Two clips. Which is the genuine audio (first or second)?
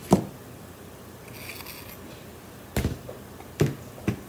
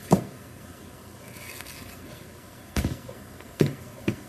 first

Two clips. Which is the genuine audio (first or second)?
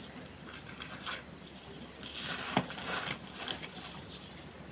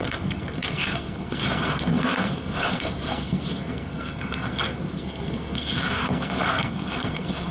first